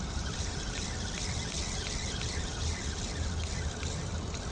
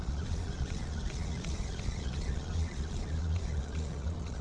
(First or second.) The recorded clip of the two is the first